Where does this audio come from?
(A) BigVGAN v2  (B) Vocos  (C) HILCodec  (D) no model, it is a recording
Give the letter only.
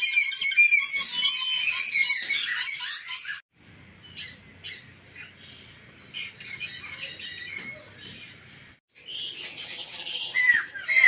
D